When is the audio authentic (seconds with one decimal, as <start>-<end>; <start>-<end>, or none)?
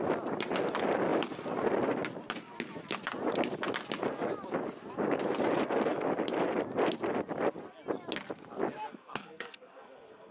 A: 0.0-8.9